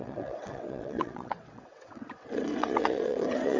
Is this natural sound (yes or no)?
no